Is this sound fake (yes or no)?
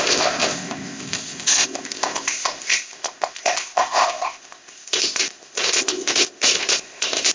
yes